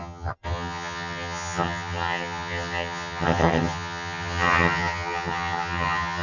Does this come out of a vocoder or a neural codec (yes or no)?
yes